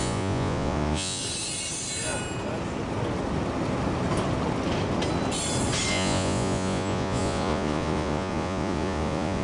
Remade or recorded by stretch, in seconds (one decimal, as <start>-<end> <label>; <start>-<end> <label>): 0.0-1.2 remade; 1.2-5.9 recorded; 5.9-9.4 remade